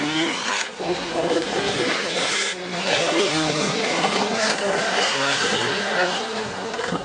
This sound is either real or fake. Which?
fake